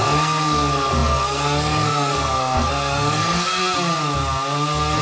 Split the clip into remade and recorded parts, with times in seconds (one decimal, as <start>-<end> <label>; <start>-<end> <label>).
0.0-3.6 remade; 3.6-5.0 recorded